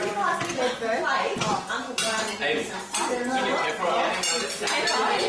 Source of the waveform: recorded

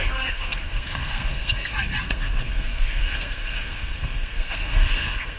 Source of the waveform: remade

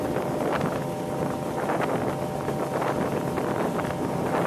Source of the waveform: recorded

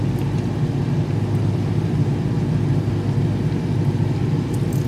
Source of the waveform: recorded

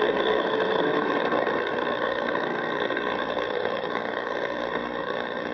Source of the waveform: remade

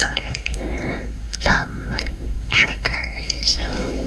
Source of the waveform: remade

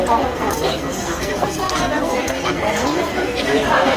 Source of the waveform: remade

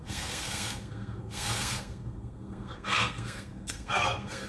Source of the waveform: remade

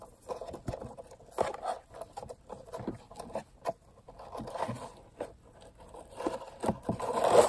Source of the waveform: recorded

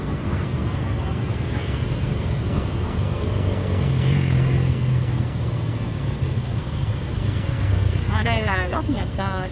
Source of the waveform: remade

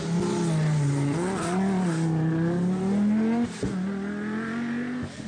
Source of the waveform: recorded